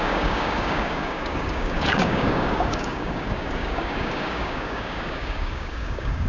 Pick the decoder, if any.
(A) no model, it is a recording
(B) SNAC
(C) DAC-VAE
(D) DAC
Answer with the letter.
D